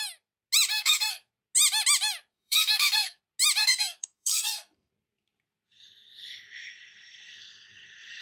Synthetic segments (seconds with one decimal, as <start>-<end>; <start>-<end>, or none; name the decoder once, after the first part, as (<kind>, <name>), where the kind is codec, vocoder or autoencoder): 0.7-1.3 (codec, SNAC); 2.3-3.2; 3.6-4.9